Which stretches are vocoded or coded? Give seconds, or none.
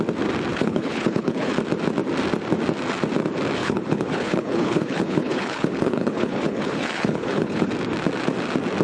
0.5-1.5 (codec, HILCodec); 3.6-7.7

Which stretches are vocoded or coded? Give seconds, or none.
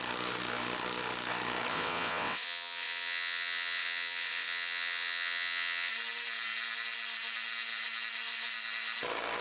1.7-5.9 (vocoder, WaveNeXt)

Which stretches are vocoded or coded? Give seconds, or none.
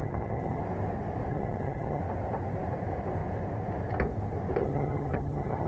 0.0-0.6 (vocoder, HiFi-GAN); 1.3-2.0; 4.6-5.7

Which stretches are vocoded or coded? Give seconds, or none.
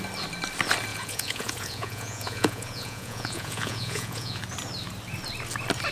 0.9-4.4 (vocoder, Vocos)